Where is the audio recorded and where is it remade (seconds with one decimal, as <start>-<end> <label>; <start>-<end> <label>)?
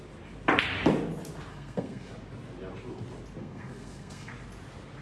0.0-1.5 recorded; 1.5-2.1 remade; 2.1-3.4 recorded; 3.4-4.3 remade; 4.3-5.0 recorded